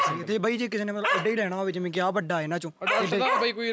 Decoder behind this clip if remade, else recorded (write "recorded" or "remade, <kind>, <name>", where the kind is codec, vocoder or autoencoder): recorded